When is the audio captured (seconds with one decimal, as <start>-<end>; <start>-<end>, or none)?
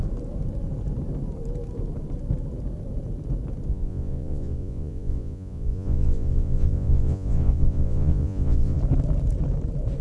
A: 0.0-3.7; 8.8-10.0